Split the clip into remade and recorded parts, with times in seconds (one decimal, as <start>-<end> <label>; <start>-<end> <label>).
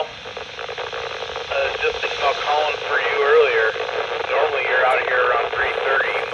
0.0-6.3 recorded